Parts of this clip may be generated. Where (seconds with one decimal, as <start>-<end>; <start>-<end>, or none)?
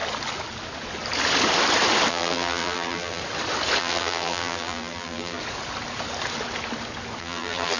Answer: 2.1-3.2; 3.8-5.4; 7.2-7.8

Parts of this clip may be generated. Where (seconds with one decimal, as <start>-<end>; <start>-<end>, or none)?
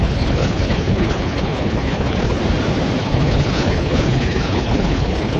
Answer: 0.0-2.4; 3.0-5.4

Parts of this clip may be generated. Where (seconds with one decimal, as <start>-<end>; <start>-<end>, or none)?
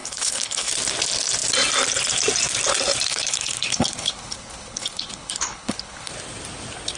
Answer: 0.0-0.7; 3.1-6.1